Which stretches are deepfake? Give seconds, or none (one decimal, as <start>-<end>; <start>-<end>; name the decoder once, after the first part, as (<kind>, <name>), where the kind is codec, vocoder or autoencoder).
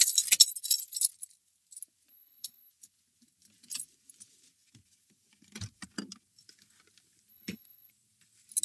2.1-2.7 (codec, HILCodec); 7.3-7.9